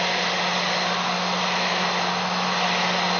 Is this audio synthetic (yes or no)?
no